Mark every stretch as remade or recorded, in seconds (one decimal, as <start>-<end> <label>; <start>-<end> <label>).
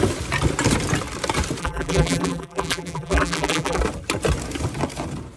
0.0-1.6 recorded; 1.6-3.8 remade; 3.8-5.4 recorded